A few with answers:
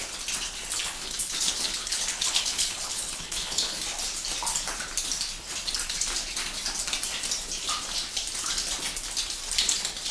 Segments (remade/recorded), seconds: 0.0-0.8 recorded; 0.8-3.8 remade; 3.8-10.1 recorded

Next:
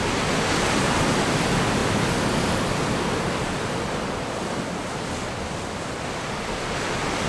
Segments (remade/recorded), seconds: 0.0-7.3 recorded

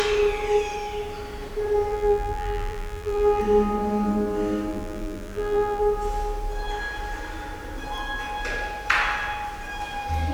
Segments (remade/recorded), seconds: 0.0-1.9 recorded; 1.9-3.4 remade; 3.4-4.7 recorded; 4.7-5.8 remade; 5.8-10.3 recorded

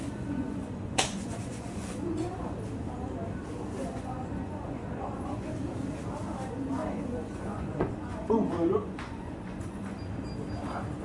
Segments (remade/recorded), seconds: 0.0-2.6 remade; 2.6-3.8 recorded; 3.8-5.5 remade; 5.5-6.8 recorded; 6.8-10.0 remade; 10.0-11.0 recorded

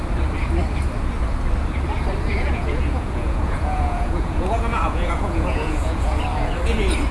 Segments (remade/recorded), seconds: 0.0-2.3 recorded; 2.3-6.2 remade; 6.2-7.1 recorded

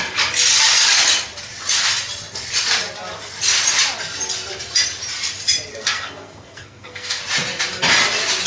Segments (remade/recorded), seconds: 0.0-5.7 recorded; 5.7-7.2 remade; 7.2-8.5 recorded